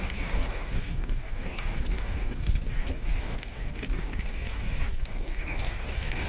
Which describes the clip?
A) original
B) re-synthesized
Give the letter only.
B